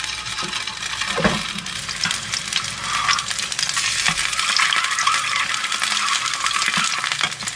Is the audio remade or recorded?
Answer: recorded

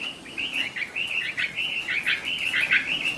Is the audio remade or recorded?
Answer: recorded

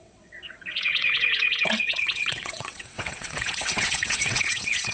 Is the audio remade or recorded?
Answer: remade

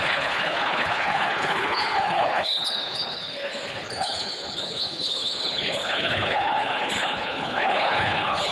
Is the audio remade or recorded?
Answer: remade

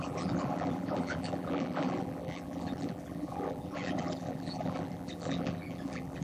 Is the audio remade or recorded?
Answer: remade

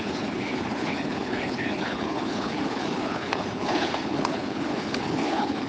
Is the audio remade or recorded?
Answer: remade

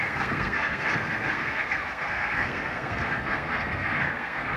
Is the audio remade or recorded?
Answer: remade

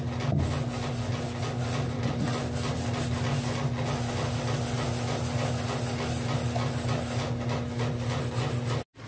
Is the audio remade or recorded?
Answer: recorded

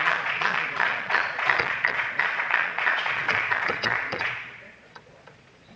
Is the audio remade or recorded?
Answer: remade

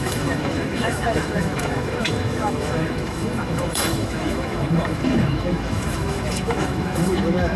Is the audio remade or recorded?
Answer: remade